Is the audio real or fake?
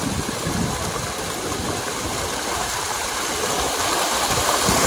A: real